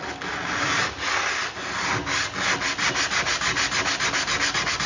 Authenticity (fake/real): real